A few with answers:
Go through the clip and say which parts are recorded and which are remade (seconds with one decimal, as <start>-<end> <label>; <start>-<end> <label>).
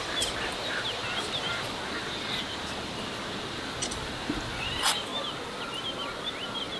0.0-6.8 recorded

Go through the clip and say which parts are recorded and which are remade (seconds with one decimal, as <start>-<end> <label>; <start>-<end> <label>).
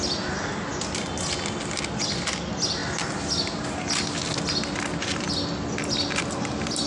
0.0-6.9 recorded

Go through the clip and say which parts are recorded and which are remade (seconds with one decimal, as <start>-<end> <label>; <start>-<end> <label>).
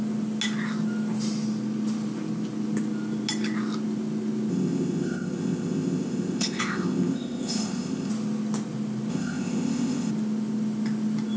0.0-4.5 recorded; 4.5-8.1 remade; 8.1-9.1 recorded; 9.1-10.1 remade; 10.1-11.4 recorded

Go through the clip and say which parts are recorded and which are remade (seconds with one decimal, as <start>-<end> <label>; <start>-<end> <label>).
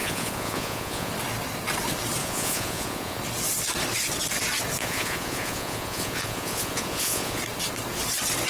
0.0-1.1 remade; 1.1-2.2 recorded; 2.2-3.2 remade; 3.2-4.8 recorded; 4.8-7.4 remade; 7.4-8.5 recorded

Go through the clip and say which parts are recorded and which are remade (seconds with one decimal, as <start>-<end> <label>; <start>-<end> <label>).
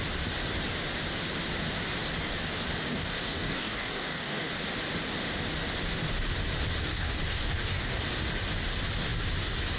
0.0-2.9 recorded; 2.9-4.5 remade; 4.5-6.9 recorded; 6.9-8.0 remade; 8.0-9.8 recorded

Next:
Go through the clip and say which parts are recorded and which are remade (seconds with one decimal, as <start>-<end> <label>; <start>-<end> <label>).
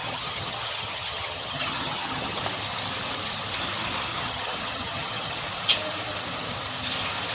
0.0-2.4 remade; 2.4-4.1 recorded; 4.1-5.4 remade; 5.4-7.3 recorded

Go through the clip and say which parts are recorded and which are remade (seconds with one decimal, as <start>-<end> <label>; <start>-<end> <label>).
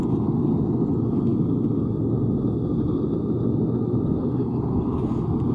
0.0-5.5 recorded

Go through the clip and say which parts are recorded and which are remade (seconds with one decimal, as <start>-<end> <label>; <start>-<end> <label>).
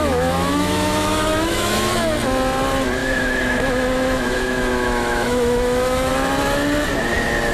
0.0-1.9 remade; 1.9-3.0 recorded; 3.0-6.1 remade; 6.1-7.5 recorded